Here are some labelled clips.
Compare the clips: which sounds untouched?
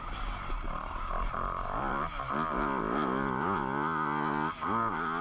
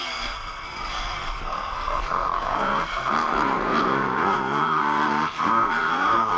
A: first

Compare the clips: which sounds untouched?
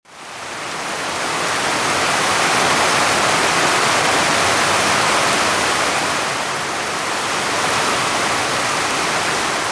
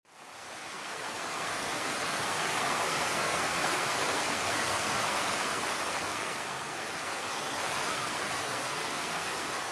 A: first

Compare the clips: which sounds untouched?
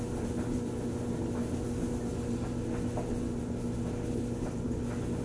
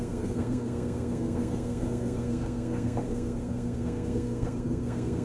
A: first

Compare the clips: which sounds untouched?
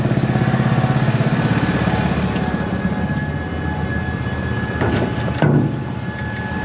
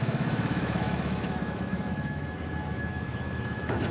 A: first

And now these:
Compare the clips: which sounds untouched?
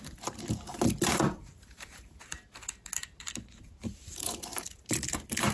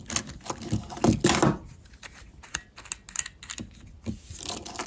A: second